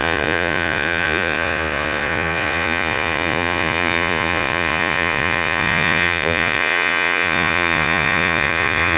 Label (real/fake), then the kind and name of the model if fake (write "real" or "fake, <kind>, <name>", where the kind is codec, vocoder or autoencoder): fake, vocoder, Vocos